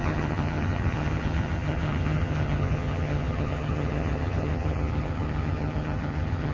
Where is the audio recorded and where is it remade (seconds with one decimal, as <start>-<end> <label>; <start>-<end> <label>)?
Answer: 0.0-6.5 remade